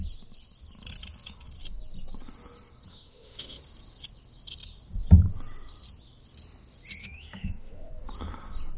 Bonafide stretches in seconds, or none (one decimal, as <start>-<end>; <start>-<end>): 0.0-2.9; 3.6-7.0; 7.9-8.8